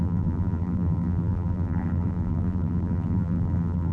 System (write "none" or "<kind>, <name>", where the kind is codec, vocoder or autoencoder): vocoder, BigVGAN v2